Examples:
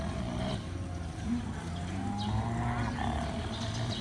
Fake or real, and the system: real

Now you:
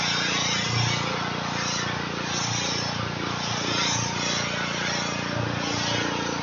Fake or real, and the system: real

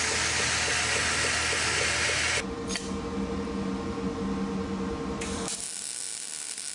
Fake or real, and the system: real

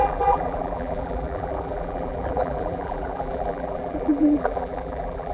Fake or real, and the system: fake, vocoder, BigVGAN v2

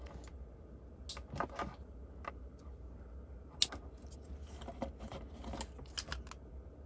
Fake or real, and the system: real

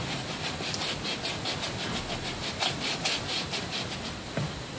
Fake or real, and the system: real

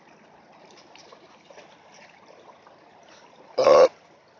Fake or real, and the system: real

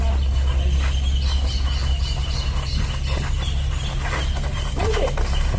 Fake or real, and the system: real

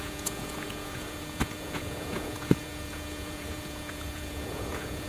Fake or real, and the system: fake, vocoder, Vocos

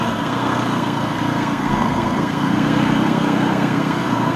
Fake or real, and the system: fake, codec, SNAC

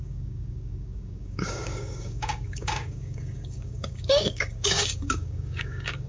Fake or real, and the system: fake, codec, DAC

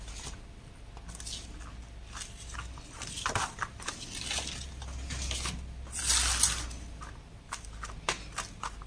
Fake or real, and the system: real